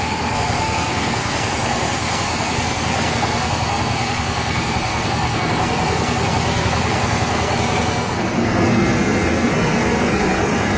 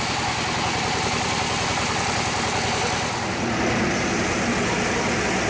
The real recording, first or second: second